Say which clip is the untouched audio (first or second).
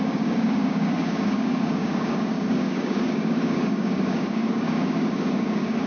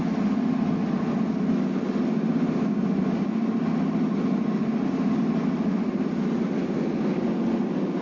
second